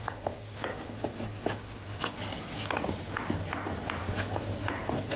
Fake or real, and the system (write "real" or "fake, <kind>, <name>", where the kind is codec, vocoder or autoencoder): real